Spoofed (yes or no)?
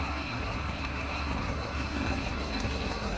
yes